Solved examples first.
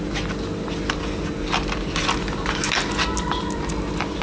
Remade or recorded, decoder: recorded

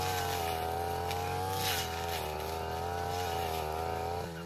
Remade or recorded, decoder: recorded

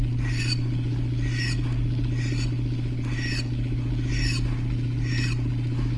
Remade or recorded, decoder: recorded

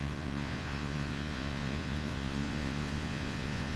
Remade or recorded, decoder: remade, vocoder, Vocos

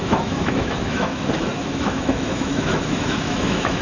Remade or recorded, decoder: remade, autoencoder, DAC-VAE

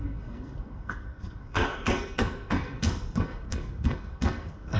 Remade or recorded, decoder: remade, codec, SNAC